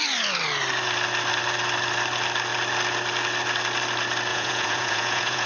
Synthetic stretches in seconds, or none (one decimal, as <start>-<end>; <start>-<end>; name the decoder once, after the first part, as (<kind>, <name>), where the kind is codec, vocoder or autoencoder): 4.3-5.5 (vocoder, Vocos)

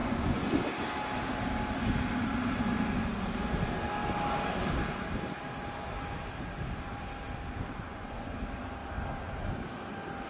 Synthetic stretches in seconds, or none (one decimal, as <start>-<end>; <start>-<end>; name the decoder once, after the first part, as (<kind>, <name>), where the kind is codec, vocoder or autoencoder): 0.0-0.5 (vocoder, Vocos); 7.9-8.4

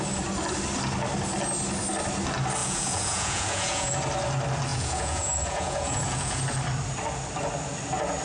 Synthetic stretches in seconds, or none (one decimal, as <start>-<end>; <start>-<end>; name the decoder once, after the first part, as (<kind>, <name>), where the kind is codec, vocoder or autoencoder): 2.6-3.9 (vocoder, Vocos); 4.7-6.4

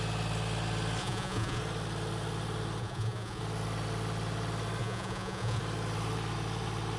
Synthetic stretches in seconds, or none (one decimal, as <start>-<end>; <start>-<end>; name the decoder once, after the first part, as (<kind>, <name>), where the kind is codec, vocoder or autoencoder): 1.0-1.6 (vocoder, Vocos); 2.8-3.4; 4.8-5.6

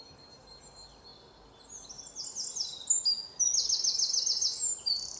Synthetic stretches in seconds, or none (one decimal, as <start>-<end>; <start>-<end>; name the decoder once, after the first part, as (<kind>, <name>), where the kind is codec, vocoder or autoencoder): none

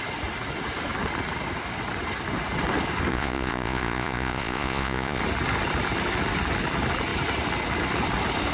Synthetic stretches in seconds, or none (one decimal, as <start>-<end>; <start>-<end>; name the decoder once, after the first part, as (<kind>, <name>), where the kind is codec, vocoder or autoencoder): 3.1-5.2 (vocoder, Vocos)

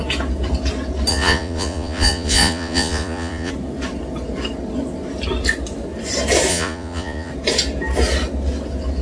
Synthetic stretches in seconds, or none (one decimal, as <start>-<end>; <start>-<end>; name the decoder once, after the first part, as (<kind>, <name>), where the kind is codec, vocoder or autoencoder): 1.1-3.5 (vocoder, Vocos); 6.5-7.3